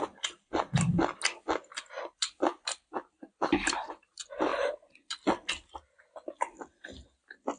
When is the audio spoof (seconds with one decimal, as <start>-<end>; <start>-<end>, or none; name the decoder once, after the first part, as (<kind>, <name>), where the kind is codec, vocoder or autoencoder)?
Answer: none